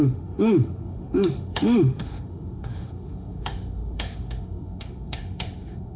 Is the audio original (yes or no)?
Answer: no